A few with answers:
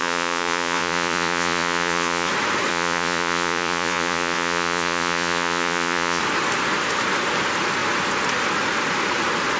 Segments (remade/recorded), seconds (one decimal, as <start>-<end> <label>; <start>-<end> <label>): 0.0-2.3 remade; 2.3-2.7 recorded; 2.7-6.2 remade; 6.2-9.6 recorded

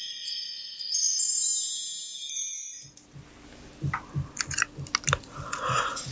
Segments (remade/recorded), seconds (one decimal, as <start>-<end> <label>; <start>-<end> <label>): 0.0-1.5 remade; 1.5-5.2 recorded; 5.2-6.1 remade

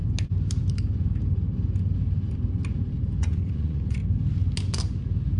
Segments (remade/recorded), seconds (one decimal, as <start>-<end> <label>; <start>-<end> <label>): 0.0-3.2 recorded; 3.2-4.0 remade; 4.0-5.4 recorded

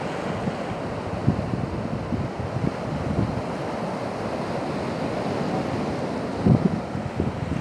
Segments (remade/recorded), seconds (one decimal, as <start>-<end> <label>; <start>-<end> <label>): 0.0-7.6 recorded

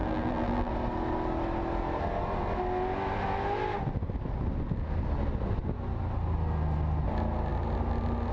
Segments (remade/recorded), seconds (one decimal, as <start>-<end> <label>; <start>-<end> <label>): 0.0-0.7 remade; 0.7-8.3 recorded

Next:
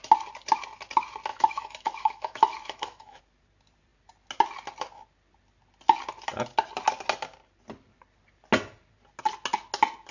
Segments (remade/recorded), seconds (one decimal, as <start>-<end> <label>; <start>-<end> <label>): 0.0-1.3 recorded; 1.3-3.2 remade; 3.2-10.1 recorded